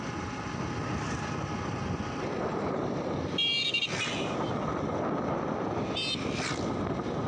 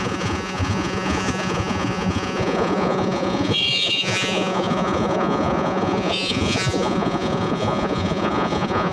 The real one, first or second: first